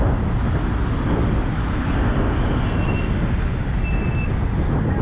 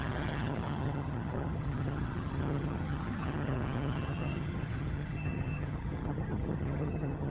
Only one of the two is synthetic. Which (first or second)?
second